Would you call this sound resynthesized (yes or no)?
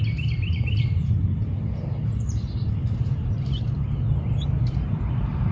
yes